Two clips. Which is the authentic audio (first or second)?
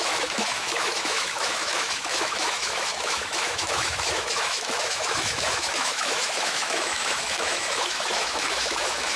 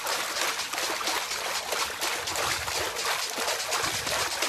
second